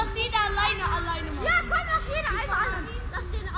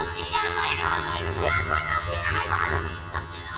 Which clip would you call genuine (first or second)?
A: first